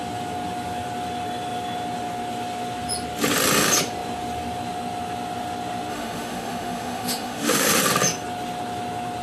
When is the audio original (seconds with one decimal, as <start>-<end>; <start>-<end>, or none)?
0.0-5.9; 7.8-9.2

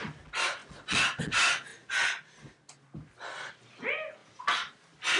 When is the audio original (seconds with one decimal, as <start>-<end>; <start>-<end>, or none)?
0.0-5.2

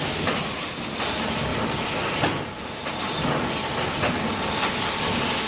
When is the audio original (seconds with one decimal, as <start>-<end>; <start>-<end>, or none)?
0.0-5.5

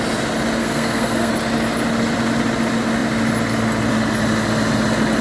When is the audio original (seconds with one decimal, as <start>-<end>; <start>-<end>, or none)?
0.0-0.6; 1.3-5.2